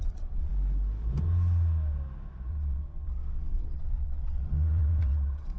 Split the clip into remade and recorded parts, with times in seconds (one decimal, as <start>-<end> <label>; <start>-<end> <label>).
0.0-0.5 remade; 0.5-2.5 recorded; 2.5-5.6 remade